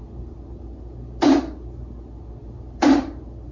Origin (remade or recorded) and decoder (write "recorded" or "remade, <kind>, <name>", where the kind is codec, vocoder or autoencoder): recorded